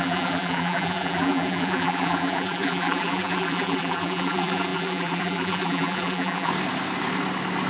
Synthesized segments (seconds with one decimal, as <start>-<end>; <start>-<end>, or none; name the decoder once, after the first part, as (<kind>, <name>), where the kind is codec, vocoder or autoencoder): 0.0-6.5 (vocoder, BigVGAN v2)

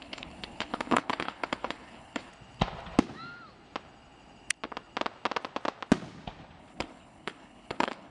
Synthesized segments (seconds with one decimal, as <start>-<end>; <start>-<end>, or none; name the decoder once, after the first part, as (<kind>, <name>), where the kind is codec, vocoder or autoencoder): 0.0-2.3 (codec, HILCodec); 6.6-8.1

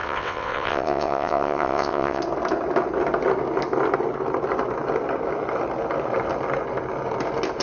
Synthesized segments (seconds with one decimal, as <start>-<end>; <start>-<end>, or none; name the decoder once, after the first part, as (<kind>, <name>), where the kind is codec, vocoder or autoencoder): 0.0-2.2 (vocoder, WaveNeXt)

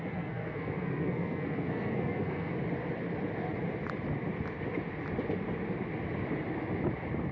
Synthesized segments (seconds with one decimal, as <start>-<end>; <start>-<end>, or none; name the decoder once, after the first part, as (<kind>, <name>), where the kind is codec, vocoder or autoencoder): 0.0-2.5 (codec, SNAC)